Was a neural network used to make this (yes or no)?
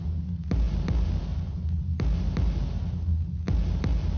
no